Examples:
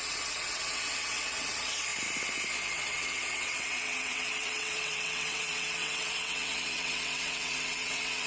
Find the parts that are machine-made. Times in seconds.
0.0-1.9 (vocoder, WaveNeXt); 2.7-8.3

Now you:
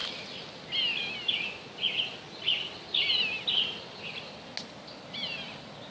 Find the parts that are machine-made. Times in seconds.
none

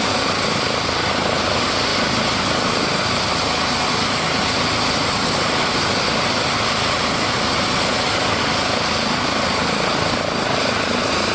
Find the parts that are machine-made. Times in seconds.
none